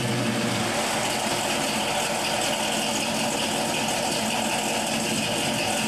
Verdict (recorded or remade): recorded